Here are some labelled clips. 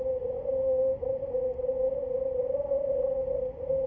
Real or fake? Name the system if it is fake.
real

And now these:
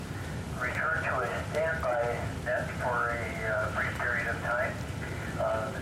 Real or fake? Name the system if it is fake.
real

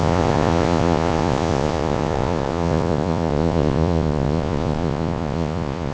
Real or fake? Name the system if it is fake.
fake, vocoder, Vocos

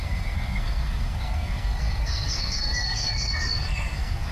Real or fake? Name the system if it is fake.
fake, codec, SNAC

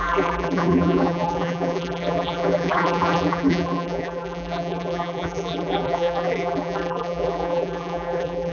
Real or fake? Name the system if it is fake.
fake, vocoder, BigVGAN v2